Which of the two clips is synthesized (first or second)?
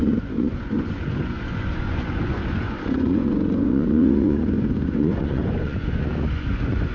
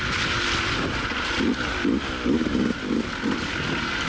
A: first